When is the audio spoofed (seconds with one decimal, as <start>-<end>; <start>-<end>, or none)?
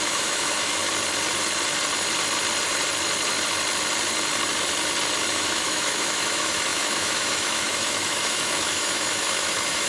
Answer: 0.0-0.8; 5.3-9.9